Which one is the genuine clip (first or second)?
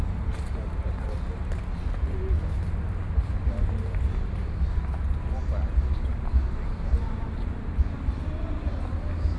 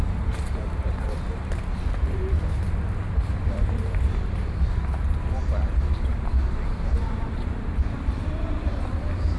first